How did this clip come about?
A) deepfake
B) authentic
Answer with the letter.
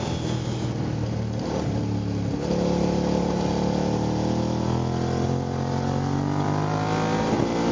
B